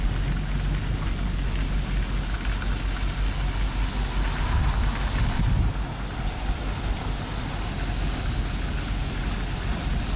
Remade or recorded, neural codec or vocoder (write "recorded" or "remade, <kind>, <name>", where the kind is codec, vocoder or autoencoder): recorded